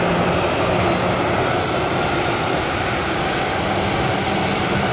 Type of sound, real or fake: real